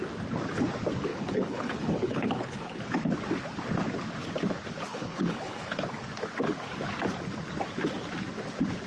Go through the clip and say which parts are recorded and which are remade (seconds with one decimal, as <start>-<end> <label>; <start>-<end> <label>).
0.0-1.1 recorded; 1.1-2.8 remade; 2.8-4.9 recorded; 4.9-5.8 remade; 5.8-8.9 recorded